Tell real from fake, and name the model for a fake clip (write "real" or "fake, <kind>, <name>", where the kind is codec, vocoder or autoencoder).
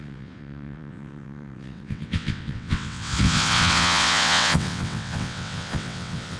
fake, vocoder, WaveNeXt